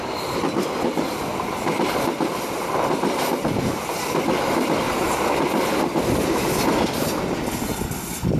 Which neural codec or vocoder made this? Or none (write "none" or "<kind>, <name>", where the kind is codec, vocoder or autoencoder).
none